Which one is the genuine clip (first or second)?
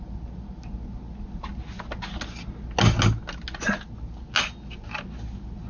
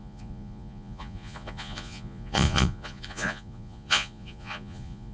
first